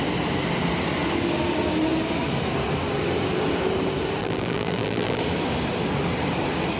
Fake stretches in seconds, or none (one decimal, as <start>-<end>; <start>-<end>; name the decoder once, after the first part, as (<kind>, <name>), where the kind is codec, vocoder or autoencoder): 4.2-5.2 (vocoder, BigVGAN v2)